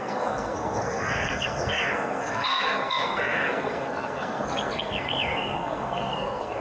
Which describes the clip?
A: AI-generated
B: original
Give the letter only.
A